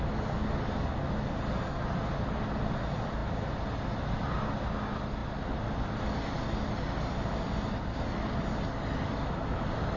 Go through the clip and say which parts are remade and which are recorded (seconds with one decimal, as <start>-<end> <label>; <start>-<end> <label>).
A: 0.0-10.0 recorded